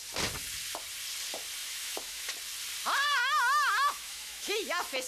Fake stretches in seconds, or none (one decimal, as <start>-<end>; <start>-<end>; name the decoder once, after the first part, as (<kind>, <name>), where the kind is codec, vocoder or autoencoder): 1.6-2.3 (autoencoder, DAC-VAE); 3.2-5.1